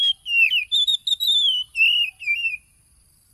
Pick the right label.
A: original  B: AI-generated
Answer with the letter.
A